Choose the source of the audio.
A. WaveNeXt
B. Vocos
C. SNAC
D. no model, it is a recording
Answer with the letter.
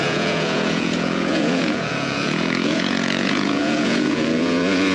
B